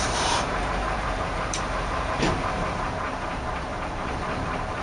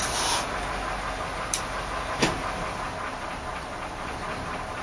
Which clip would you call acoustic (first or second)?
second